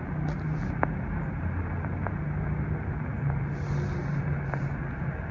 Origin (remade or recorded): recorded